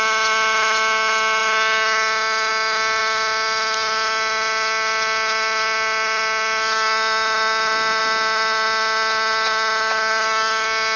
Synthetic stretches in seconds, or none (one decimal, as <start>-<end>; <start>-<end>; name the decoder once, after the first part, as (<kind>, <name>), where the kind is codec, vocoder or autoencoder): none